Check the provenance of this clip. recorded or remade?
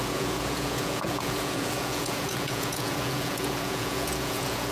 remade